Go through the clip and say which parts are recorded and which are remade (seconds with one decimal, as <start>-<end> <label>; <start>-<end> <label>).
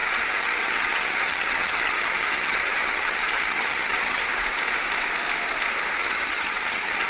0.0-4.3 remade; 4.3-6.0 recorded; 6.0-7.1 remade